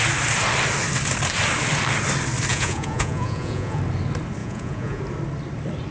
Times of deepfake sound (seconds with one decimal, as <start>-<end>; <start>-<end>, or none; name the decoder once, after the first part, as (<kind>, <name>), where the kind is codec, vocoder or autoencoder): 2.5-3.8 (vocoder, Vocos); 4.4-5.0